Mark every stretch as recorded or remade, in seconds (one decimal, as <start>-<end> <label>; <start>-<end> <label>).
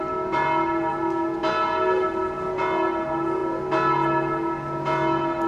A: 0.0-5.5 recorded